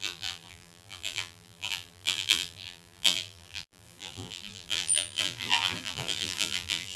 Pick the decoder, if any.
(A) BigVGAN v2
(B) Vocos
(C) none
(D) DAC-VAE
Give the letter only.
A